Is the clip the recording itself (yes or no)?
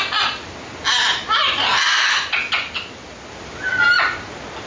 yes